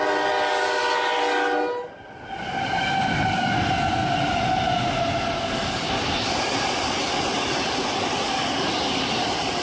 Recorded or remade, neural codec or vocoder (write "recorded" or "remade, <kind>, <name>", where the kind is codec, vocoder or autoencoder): recorded